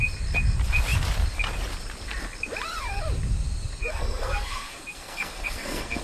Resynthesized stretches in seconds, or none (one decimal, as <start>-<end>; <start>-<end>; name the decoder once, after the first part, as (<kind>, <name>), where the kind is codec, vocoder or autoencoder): 3.8-6.0 (codec, SNAC)